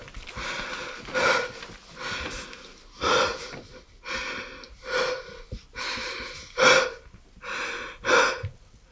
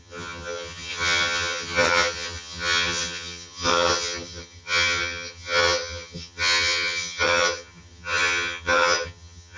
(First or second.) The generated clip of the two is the second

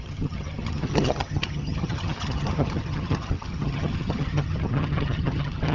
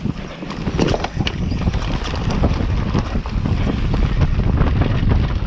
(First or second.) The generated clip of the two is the first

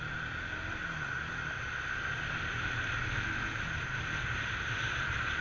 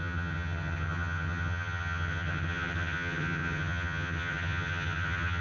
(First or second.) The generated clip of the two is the second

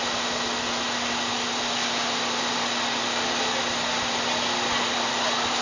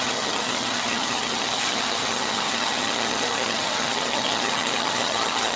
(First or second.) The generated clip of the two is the second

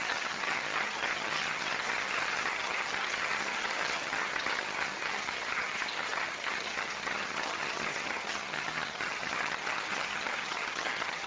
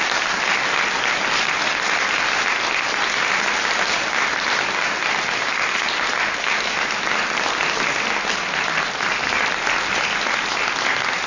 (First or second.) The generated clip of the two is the first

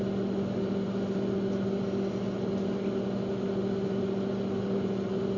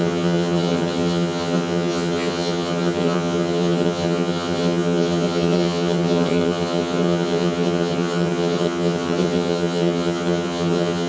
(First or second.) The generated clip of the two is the second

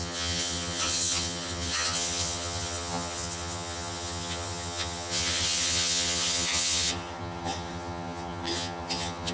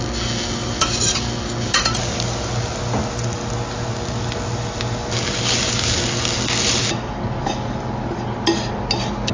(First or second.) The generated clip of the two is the first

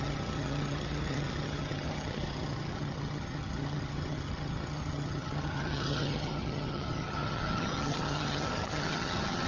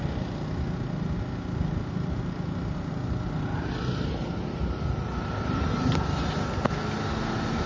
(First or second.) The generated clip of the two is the first